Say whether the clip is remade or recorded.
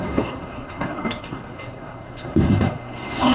remade